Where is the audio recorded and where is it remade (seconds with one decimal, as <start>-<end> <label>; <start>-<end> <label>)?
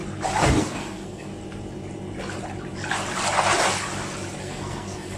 0.0-0.6 recorded; 0.6-1.3 remade; 1.3-4.4 recorded; 4.4-5.2 remade